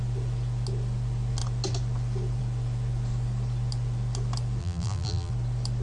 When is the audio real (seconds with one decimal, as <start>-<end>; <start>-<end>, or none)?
0.0-4.6; 5.3-5.8